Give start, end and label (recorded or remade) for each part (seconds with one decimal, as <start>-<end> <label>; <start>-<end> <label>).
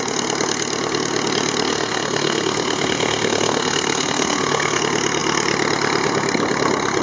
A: 0.0-1.7 recorded; 1.7-4.8 remade; 4.8-7.0 recorded